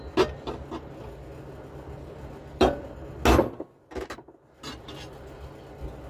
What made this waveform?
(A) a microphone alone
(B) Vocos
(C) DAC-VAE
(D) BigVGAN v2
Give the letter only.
A